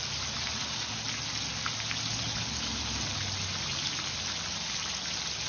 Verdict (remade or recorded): recorded